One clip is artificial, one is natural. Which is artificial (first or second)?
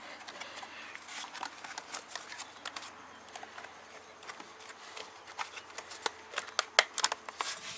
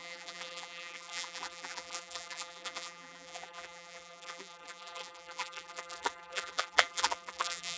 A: second